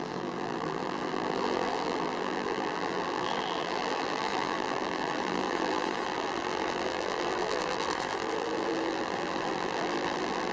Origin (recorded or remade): remade